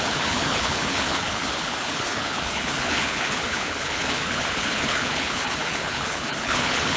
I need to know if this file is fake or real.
fake